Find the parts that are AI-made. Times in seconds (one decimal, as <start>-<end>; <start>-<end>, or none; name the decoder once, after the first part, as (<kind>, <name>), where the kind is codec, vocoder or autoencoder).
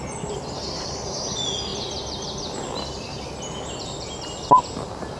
none